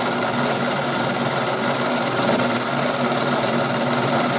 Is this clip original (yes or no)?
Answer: yes